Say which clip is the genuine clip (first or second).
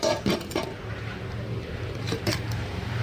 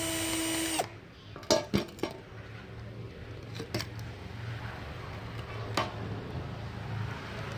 second